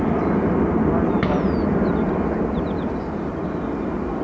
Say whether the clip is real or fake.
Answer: real